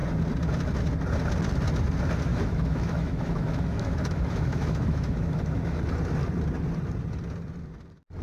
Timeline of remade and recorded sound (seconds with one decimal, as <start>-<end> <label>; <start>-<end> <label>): 0.0-2.3 recorded; 2.3-5.8 remade; 5.8-8.2 recorded